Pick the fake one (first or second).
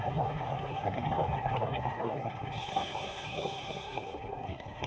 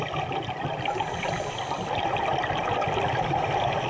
first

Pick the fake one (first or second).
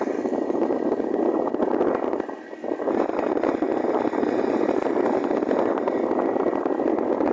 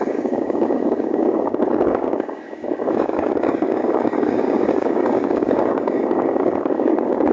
second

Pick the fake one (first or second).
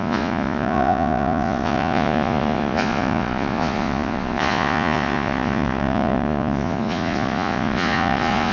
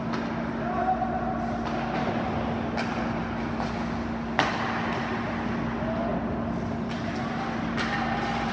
first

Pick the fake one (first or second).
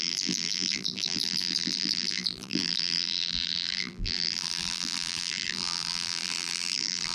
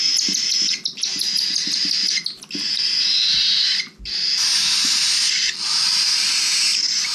first